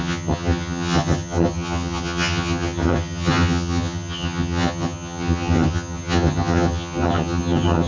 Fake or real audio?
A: fake